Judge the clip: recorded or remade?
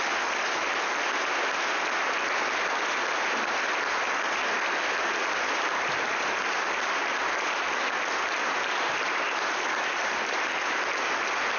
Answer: recorded